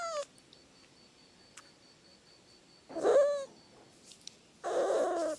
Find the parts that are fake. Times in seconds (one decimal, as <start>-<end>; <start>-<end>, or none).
none